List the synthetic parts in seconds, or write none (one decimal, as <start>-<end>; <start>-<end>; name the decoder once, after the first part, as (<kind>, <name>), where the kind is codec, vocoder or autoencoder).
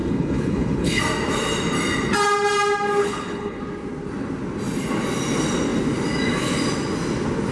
0.0-1.0 (codec, HILCodec); 3.0-3.6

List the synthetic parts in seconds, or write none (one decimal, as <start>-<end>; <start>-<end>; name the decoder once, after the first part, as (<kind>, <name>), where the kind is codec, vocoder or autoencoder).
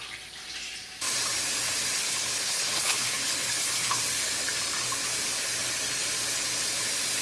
2.0-4.0 (codec, HILCodec)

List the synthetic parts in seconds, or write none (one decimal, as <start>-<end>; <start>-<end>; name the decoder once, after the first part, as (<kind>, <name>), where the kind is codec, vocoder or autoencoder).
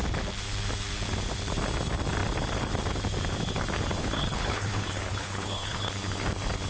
4.0-5.9 (codec, HILCodec)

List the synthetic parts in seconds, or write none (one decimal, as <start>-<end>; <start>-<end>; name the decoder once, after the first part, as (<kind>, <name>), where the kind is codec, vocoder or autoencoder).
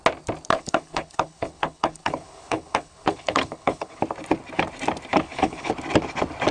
0.5-4.0 (codec, HILCodec); 5.1-5.7